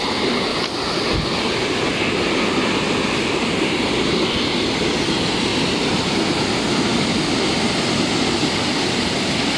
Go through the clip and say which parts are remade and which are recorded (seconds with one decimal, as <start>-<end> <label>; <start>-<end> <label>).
0.0-0.5 recorded; 0.5-3.7 remade; 3.7-5.5 recorded; 5.5-6.4 remade; 6.4-9.6 recorded